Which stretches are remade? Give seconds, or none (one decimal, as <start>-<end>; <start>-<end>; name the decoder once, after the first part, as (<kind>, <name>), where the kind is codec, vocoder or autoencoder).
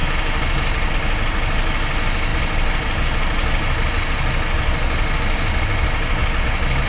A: none